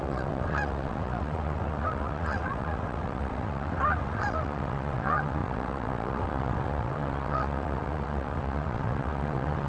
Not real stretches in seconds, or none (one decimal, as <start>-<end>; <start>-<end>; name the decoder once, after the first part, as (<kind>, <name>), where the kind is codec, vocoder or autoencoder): 0.0-9.7 (vocoder, WaveNeXt)